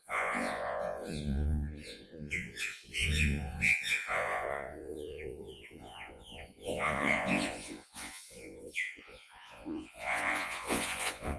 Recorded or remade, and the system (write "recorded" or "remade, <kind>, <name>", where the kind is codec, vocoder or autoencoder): remade, vocoder, Vocos